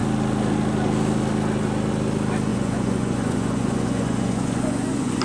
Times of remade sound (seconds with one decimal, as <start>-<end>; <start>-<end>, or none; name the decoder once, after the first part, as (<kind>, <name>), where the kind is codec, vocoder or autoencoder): 2.5-5.2 (vocoder, Vocos)